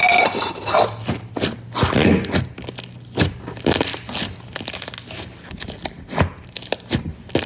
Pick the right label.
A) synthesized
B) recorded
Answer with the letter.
B